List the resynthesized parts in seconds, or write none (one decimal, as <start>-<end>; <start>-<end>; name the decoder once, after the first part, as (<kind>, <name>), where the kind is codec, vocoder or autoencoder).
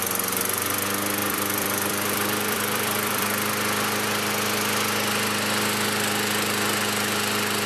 1.2-3.5 (vocoder, BigVGAN v2)